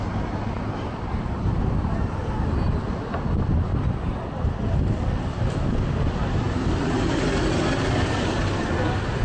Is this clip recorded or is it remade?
recorded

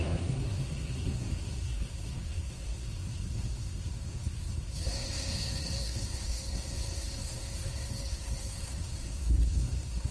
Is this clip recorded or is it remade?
remade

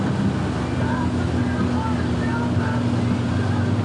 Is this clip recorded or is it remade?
recorded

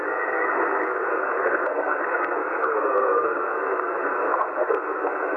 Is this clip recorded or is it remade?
remade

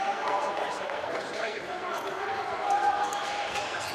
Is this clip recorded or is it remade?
remade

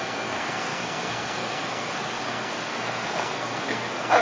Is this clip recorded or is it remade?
remade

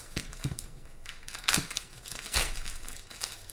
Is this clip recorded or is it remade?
remade